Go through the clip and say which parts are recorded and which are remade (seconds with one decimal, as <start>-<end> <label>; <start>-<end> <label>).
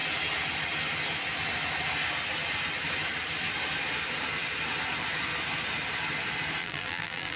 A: 0.0-6.6 recorded; 6.6-7.4 remade